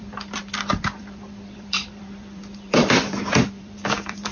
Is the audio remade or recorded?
remade